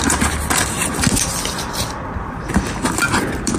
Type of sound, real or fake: fake